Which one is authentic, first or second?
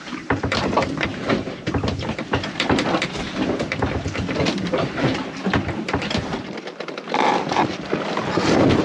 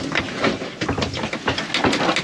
second